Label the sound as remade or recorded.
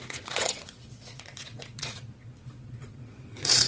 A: remade